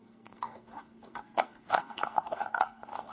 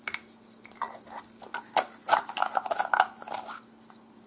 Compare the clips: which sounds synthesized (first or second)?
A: first